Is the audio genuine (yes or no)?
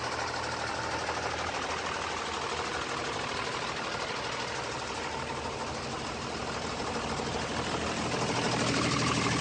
yes